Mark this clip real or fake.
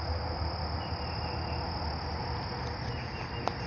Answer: real